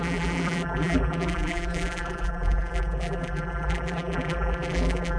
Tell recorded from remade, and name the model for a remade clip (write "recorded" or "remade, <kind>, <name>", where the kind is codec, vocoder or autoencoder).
remade, vocoder, BigVGAN v2